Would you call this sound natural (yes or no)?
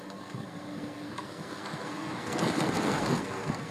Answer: no